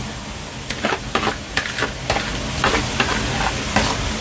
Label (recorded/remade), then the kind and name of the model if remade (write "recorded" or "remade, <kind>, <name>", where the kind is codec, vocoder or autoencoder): recorded